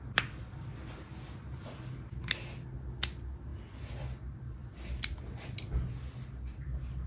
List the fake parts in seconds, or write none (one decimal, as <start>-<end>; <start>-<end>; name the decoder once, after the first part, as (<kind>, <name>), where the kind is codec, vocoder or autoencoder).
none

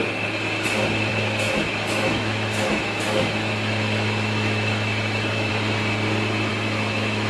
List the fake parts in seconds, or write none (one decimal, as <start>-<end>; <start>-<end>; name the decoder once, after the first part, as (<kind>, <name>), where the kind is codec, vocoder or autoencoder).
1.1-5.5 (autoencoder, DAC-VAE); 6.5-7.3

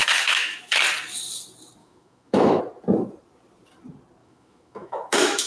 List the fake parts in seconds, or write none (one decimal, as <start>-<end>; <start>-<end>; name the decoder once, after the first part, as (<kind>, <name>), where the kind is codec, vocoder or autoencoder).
0.0-0.8 (autoencoder, DAC-VAE); 1.8-2.6; 4.2-5.5

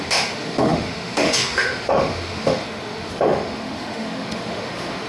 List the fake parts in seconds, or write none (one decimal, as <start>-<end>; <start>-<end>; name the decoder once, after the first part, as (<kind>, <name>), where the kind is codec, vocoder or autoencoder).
0.0-5.1 (autoencoder, DAC-VAE)